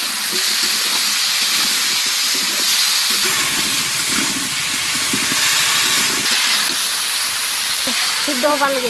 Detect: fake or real fake